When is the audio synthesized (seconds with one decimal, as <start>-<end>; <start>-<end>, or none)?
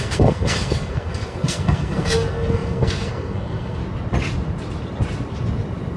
0.0-3.8